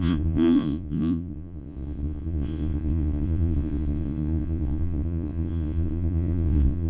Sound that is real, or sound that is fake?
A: fake